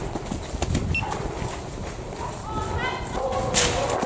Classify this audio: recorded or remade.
recorded